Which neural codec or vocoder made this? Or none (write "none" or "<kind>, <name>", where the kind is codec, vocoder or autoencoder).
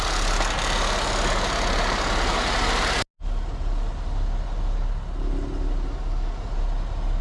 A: none